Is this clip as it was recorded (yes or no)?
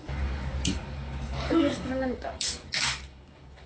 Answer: no